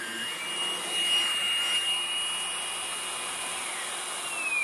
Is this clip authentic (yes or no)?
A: yes